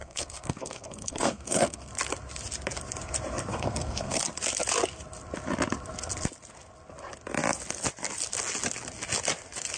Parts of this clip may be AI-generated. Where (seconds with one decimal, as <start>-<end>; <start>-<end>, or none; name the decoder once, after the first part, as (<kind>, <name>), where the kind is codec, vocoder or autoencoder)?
0.0-1.9 (codec, SNAC); 3.5-4.2